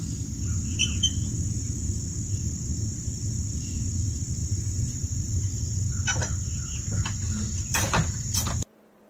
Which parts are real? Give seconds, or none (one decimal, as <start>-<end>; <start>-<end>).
0.0-4.4; 5.6-7.7